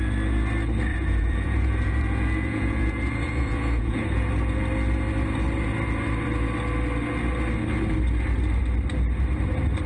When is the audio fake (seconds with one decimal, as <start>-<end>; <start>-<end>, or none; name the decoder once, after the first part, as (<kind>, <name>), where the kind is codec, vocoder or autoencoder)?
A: 0.9-4.3 (vocoder, Vocos)